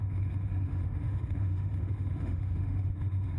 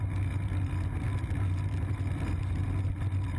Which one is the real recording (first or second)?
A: second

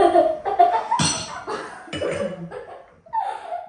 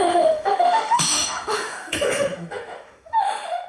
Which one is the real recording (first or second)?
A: first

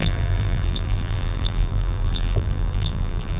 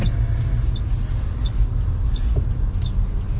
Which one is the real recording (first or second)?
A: second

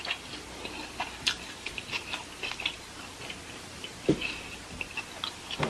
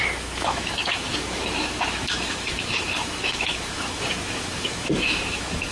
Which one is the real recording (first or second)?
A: first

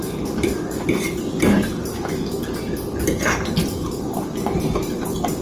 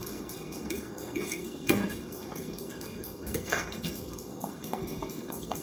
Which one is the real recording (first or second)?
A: first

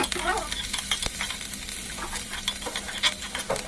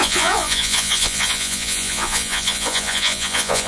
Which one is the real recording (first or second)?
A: first